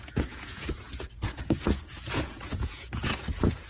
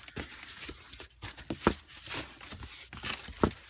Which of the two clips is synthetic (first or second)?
first